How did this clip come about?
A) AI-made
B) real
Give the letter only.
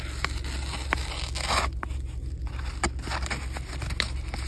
B